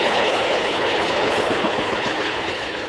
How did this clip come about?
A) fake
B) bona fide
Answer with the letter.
A